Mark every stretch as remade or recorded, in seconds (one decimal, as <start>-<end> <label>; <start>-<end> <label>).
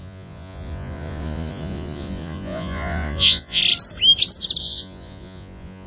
0.0-3.6 remade; 3.6-4.6 recorded; 4.6-5.9 remade